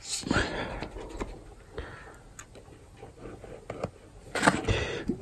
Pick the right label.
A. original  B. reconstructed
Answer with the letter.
A